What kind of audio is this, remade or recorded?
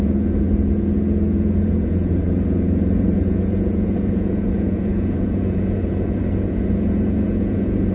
remade